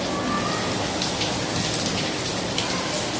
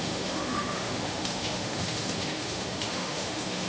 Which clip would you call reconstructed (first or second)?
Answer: second